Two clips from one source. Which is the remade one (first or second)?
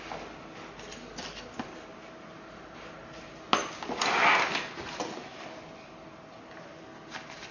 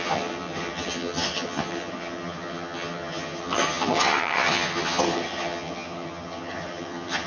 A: second